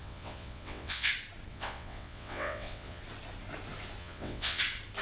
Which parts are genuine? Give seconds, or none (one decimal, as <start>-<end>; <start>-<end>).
1.1-1.5; 3.0-4.0; 4.6-5.0